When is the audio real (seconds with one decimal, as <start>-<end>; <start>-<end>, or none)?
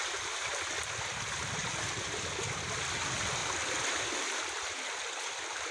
0.0-5.7